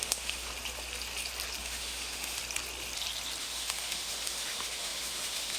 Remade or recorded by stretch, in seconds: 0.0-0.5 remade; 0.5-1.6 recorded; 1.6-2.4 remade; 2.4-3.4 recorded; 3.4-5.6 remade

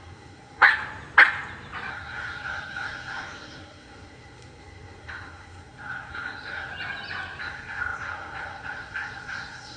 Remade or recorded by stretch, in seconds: 0.0-0.7 remade; 0.7-1.9 recorded; 1.9-6.7 remade; 6.7-7.4 recorded; 7.4-9.8 remade

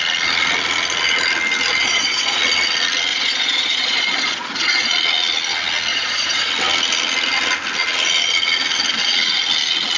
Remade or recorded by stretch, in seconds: 0.0-1.8 recorded; 1.8-2.4 remade; 2.4-3.1 recorded; 3.1-4.9 remade; 4.9-5.9 recorded; 5.9-6.5 remade; 6.5-10.0 recorded

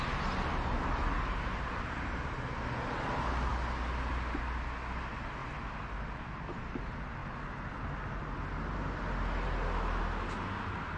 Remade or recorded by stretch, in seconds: 0.0-11.0 recorded

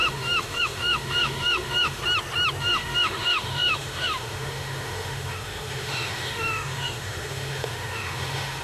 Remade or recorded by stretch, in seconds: 0.0-2.0 remade; 2.0-2.6 recorded; 2.6-8.6 remade

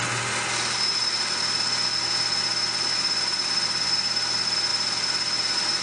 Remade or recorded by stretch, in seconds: 0.0-5.8 recorded